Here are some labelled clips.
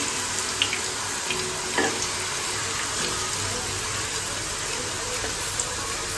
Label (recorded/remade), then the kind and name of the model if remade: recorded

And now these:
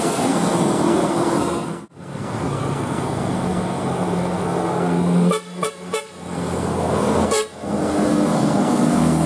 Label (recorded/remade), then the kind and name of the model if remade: remade, codec, SNAC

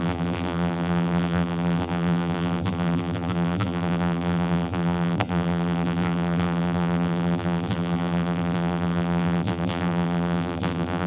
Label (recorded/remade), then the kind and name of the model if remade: remade, vocoder, BigVGAN v2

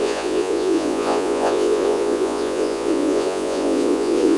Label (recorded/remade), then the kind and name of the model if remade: remade, vocoder, Vocos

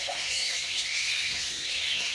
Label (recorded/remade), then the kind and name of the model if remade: remade, codec, SNAC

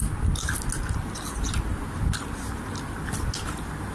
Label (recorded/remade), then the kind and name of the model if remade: recorded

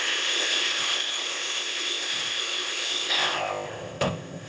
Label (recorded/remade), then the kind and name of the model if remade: remade, codec, ZipCodec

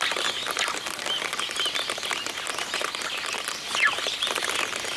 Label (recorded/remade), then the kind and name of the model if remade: recorded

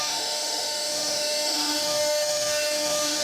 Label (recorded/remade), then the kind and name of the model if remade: remade, autoencoder, DAC-VAE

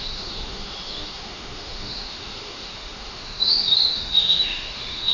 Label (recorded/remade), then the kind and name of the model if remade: remade, autoencoder, DAC-VAE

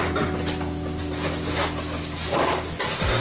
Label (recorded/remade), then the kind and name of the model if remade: recorded